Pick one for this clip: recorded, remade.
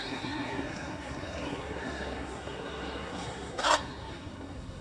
remade